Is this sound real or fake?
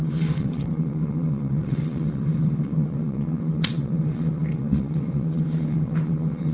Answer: fake